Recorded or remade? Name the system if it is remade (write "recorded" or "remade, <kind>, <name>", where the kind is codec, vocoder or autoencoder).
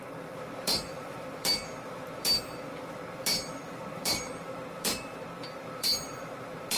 remade, vocoder, BigVGAN v2